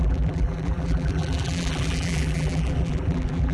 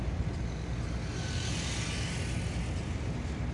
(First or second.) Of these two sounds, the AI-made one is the first